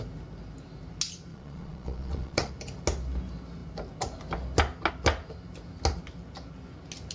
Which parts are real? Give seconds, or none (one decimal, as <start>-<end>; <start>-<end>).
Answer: 0.0-1.3; 2.5-7.1